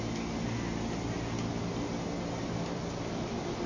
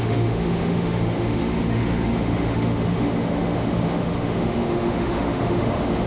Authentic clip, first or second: first